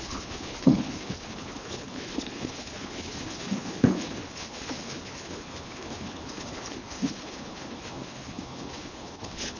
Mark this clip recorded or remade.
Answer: remade